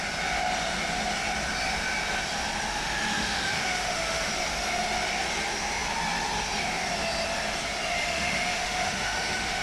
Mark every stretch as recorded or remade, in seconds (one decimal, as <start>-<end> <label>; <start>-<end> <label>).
0.0-2.7 recorded; 2.7-4.3 remade; 4.3-8.0 recorded; 8.0-9.6 remade